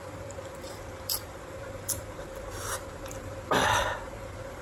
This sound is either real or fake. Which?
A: fake